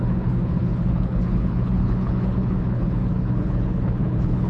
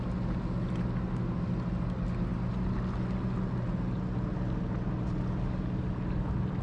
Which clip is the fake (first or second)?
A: first